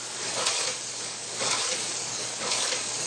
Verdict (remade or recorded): remade